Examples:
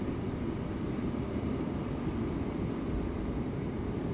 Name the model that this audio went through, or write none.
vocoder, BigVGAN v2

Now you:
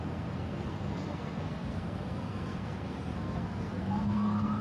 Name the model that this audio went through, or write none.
codec, SNAC